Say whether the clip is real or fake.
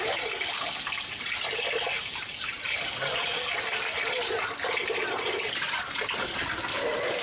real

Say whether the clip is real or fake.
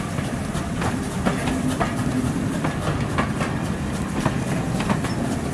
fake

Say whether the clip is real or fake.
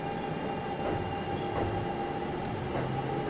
real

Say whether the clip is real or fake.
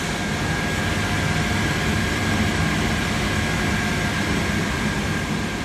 real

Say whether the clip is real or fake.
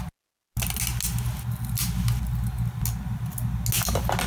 real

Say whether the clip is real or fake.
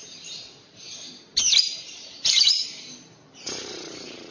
fake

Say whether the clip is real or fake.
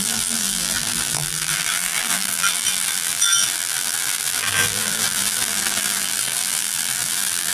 fake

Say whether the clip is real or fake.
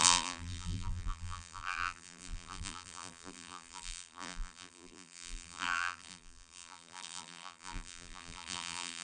fake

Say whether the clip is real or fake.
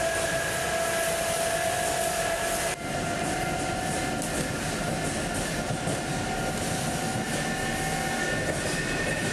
real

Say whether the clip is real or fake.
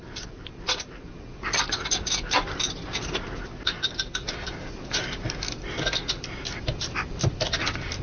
fake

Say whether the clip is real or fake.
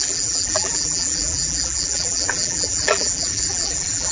fake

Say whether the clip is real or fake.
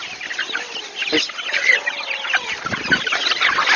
real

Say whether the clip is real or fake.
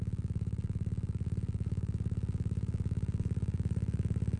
fake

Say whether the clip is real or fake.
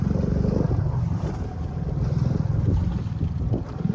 real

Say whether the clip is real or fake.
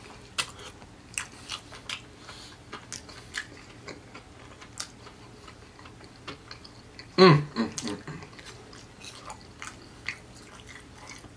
real